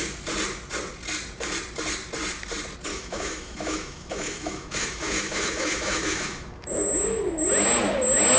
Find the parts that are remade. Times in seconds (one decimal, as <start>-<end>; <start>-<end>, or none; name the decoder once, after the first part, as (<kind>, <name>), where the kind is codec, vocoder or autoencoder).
2.9-6.7 (autoencoder, DAC-VAE)

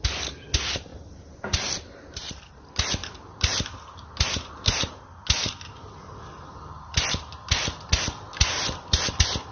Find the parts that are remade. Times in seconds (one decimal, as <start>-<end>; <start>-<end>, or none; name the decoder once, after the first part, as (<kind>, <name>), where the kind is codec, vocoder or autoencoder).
none

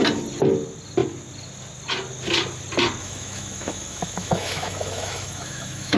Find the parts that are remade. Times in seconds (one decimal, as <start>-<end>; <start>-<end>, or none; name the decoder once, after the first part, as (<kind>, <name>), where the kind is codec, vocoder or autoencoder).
3.0-6.0 (autoencoder, DAC-VAE)